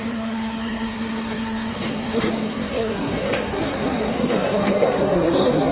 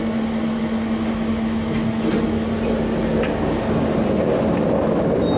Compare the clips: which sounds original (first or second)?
second